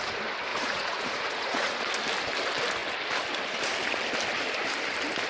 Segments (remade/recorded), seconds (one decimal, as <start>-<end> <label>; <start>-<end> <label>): 0.0-0.5 recorded; 0.5-1.8 remade; 1.8-5.3 recorded